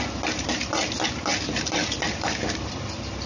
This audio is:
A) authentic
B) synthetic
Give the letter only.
A